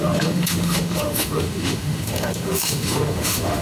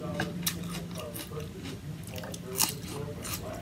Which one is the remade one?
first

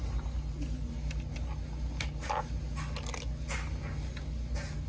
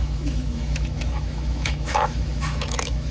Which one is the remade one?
second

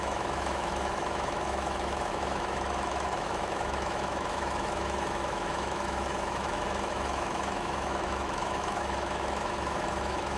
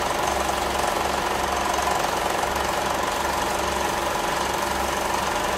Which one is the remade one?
first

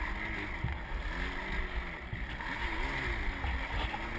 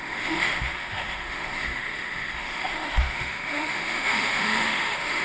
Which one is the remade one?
second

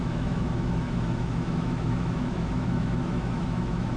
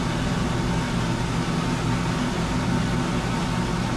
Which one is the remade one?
first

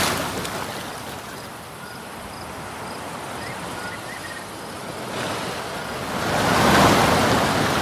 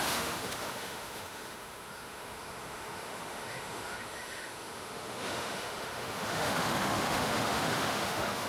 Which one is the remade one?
second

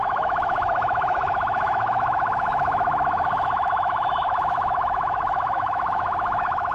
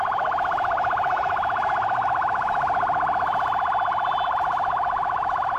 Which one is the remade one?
first